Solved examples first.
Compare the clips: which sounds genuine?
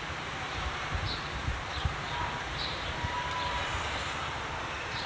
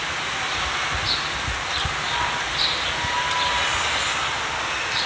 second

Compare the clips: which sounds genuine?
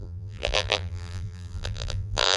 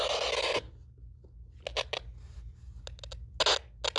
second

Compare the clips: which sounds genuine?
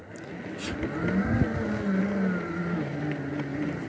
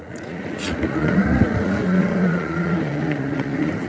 first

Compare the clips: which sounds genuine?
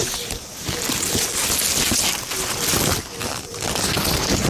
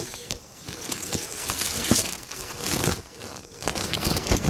first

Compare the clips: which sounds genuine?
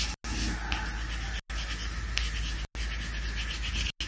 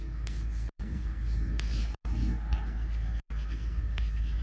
first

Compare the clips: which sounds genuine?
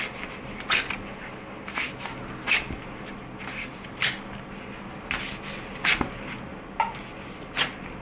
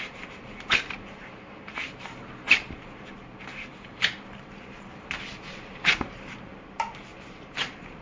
first